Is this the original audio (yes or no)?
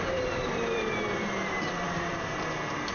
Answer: no